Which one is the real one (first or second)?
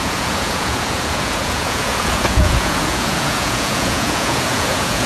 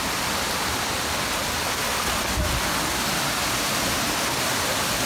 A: second